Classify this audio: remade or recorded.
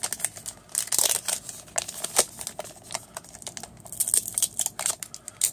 recorded